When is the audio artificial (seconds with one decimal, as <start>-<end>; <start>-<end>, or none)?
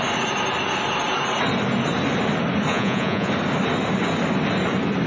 2.7-3.3